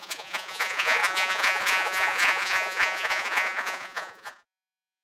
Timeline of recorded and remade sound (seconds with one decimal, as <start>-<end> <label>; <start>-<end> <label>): 0.0-5.0 remade